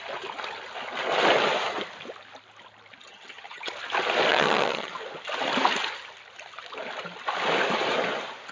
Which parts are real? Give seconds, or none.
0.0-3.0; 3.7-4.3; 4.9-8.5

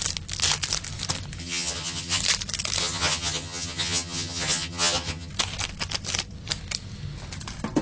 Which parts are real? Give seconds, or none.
0.0-1.4; 2.2-2.8; 5.3-7.8

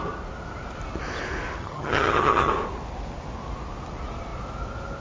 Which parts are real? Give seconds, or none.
0.0-1.6; 2.5-5.0

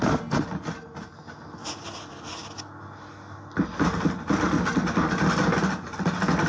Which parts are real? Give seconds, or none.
0.0-6.5